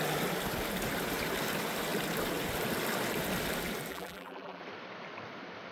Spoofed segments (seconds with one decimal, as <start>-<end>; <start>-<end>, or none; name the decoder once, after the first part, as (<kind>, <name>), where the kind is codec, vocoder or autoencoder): 3.9-4.6 (vocoder, BigVGAN v2)